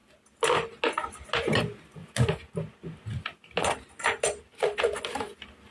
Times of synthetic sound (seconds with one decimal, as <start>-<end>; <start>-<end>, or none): none